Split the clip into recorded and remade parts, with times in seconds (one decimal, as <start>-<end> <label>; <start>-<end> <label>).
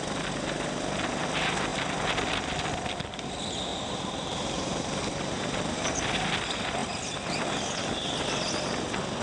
0.0-3.7 recorded; 3.7-5.0 remade; 5.0-9.2 recorded